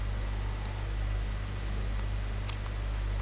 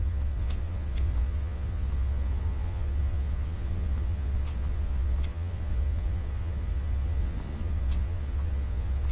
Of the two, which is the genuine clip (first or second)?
first